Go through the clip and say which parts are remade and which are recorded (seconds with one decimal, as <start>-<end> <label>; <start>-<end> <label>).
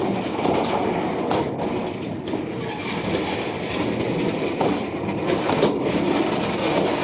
0.0-7.0 recorded